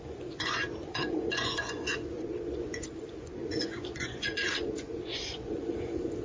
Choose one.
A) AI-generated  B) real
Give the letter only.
A